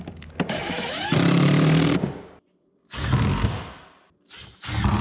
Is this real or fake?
real